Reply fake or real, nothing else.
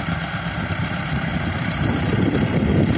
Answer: fake